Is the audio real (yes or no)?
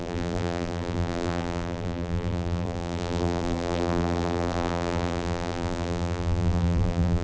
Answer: no